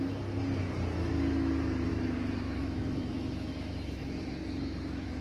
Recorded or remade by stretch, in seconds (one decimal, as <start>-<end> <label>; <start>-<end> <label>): 0.0-1.9 recorded; 1.9-5.2 remade